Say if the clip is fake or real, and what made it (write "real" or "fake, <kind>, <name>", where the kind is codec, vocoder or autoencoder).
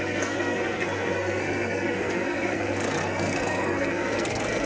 fake, codec, SNAC